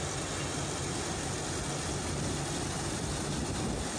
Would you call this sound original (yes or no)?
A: yes